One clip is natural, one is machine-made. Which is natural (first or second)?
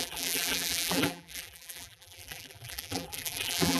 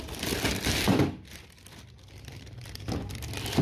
second